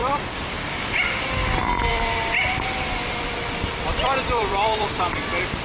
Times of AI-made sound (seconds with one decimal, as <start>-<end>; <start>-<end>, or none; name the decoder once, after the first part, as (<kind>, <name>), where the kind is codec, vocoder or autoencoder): 0.0-1.1 (vocoder, BigVGAN v2); 1.9-5.6